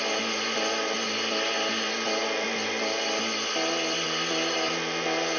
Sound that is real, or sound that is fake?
real